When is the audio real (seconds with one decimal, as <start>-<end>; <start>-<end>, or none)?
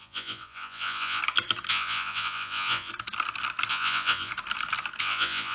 1.2-1.7; 2.9-3.7; 4.3-5.0